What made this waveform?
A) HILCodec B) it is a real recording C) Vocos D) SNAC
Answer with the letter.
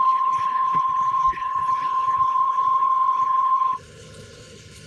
A